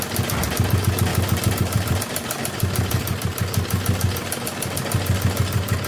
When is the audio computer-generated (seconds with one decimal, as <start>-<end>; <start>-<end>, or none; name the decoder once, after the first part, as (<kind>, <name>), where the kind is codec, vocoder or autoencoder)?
1.1-3.2 (vocoder, BigVGAN v2)